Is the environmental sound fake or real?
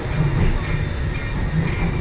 real